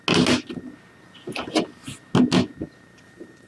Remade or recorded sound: recorded